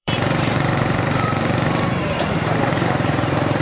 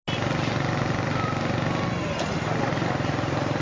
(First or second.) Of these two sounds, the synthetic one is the first